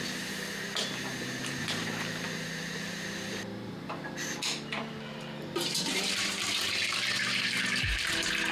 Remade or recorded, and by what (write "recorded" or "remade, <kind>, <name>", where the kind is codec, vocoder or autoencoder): remade, vocoder, BigVGAN v2